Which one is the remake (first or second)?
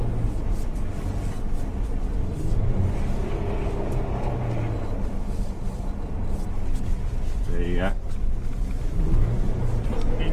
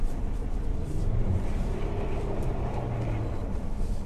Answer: second